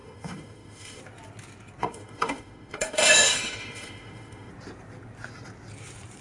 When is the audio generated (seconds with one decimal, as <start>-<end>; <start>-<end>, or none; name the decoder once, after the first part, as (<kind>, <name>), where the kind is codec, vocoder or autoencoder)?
0.0-1.0 (autoencoder, DAC-VAE); 1.8-4.5